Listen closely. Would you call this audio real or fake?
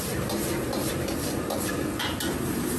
real